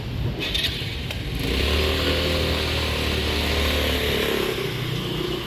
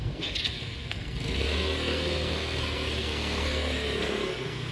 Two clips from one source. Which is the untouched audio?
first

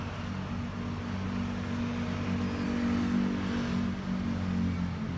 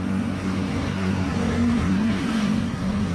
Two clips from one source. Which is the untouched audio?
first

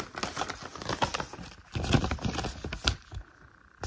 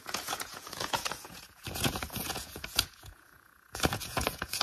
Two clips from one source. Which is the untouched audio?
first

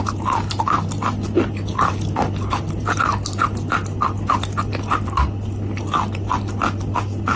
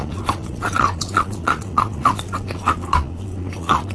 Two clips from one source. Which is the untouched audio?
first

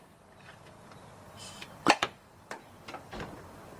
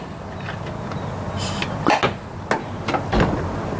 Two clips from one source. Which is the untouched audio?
second